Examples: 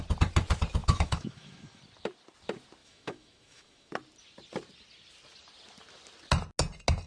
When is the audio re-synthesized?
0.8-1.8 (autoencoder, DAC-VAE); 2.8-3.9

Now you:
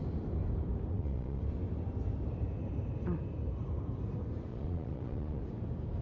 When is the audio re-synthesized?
0.9-1.4 (vocoder, Vocos); 4.5-5.4

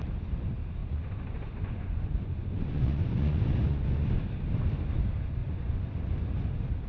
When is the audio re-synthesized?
0.8-4.2 (vocoder, Vocos); 5.4-5.9

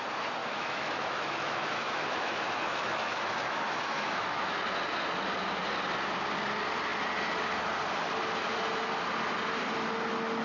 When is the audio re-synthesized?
0.4-4.6 (autoencoder, DAC-VAE)